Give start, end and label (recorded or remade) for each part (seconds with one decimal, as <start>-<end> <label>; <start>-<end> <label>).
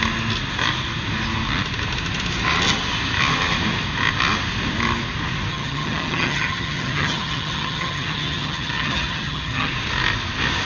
0.0-5.5 recorded; 5.5-9.7 remade; 9.7-10.6 recorded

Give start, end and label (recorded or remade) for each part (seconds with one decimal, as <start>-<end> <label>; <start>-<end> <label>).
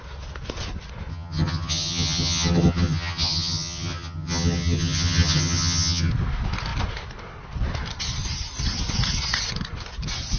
0.0-1.1 recorded; 1.1-6.1 remade; 6.1-10.4 recorded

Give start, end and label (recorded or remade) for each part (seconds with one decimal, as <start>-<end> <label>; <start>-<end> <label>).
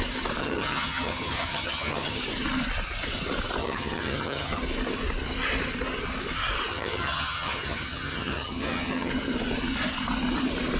0.0-0.4 recorded; 0.4-2.2 remade; 2.2-3.6 recorded; 3.6-4.6 remade; 4.6-6.7 recorded; 6.7-9.1 remade; 9.1-10.8 recorded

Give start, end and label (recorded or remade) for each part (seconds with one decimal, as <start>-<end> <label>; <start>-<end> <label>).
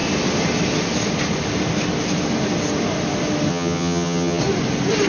0.0-3.5 recorded; 3.5-4.4 remade; 4.4-5.1 recorded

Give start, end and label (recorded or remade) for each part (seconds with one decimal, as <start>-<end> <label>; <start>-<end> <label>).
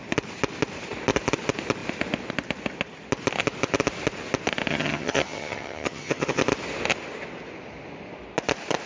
0.0-4.7 recorded; 4.7-6.4 remade; 6.4-8.9 recorded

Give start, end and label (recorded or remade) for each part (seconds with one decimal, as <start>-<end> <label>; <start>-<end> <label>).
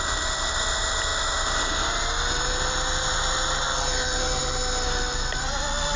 0.0-6.0 recorded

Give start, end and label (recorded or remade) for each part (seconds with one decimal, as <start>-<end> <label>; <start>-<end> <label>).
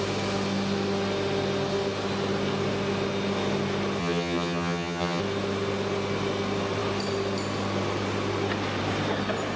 0.0-4.0 recorded; 4.0-5.2 remade; 5.2-9.6 recorded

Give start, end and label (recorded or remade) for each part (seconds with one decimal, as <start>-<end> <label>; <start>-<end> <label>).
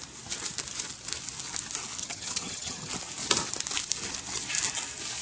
0.0-2.0 recorded; 2.0-2.9 remade; 2.9-5.2 recorded